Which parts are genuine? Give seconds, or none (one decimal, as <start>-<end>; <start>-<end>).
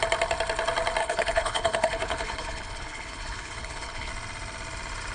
0.0-1.0; 4.1-5.1